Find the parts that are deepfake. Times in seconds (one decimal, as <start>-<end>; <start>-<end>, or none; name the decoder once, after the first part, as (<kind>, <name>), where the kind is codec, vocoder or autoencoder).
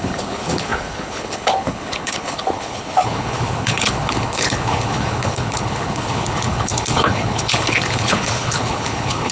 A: 0.0-9.3 (codec, HILCodec)